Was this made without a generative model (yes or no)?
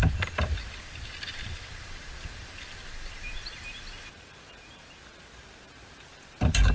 yes